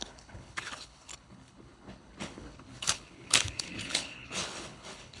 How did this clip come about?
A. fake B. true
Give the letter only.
A